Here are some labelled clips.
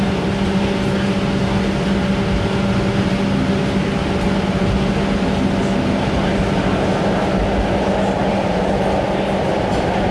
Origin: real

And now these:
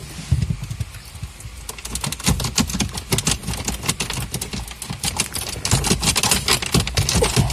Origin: real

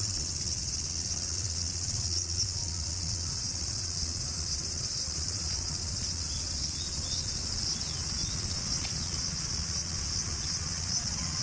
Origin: fake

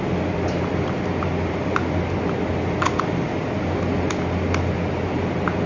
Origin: real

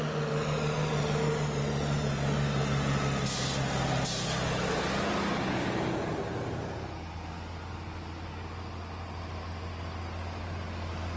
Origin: real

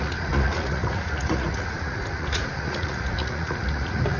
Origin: fake